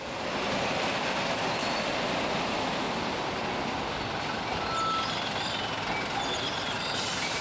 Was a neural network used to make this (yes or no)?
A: no